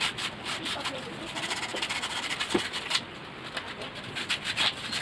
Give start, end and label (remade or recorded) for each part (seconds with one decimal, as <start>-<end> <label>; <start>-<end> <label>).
0.0-5.0 recorded